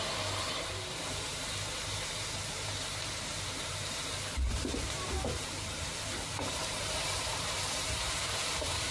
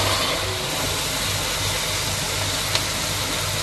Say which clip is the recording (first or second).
second